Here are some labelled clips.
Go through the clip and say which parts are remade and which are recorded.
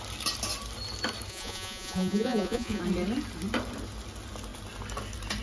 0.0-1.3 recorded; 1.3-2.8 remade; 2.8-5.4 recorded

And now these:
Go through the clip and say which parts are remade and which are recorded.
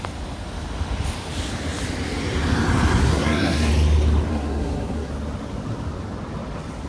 0.0-3.0 recorded; 3.0-3.7 remade; 3.7-4.3 recorded; 4.3-5.1 remade; 5.1-6.9 recorded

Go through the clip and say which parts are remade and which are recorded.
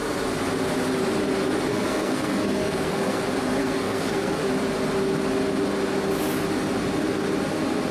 0.0-1.7 recorded; 1.7-3.2 remade; 3.2-3.6 recorded; 3.6-4.4 remade; 4.4-7.9 recorded